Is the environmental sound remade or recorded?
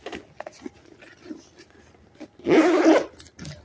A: recorded